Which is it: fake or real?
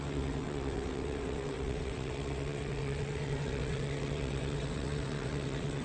fake